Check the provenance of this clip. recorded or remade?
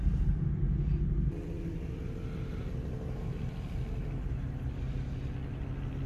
recorded